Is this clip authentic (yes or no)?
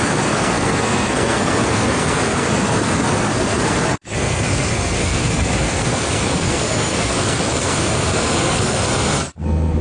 no